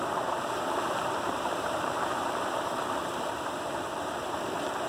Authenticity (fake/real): fake